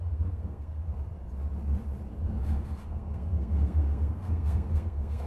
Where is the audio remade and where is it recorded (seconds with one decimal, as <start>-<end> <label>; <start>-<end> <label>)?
0.0-0.9 remade; 0.9-2.2 recorded; 2.2-5.3 remade